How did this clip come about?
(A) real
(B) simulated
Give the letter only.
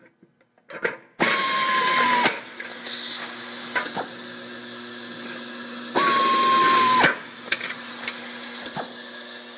A